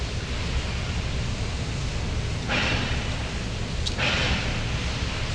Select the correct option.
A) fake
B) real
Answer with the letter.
B